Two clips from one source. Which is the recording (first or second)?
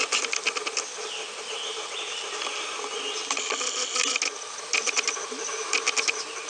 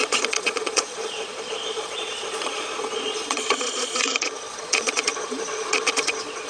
first